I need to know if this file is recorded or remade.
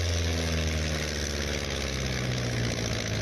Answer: recorded